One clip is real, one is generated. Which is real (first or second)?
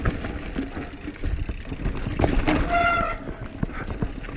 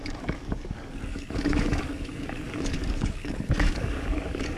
first